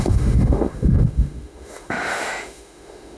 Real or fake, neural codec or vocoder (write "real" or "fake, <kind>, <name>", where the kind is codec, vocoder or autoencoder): fake, autoencoder, DAC-VAE